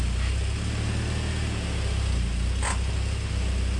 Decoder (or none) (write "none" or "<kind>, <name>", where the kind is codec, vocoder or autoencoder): none